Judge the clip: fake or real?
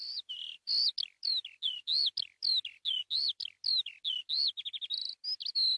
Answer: real